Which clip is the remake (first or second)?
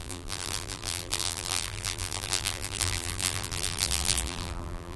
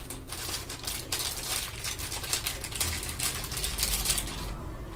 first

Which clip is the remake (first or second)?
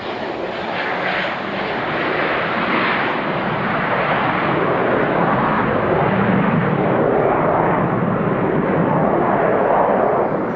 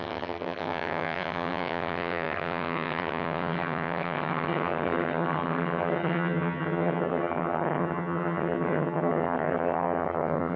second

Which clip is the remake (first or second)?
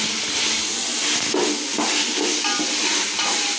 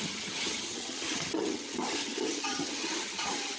second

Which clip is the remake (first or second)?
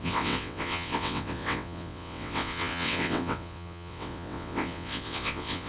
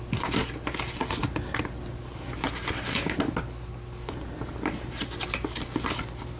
first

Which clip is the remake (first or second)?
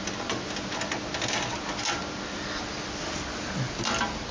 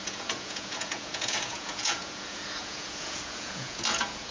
second